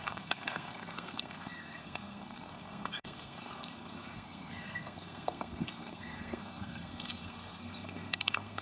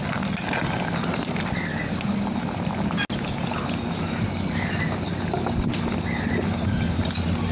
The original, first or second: second